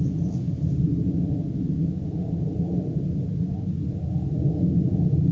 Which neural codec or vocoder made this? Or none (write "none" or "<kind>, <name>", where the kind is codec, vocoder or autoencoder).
none